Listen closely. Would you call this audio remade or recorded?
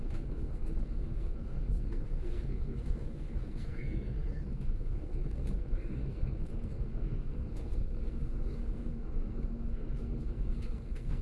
remade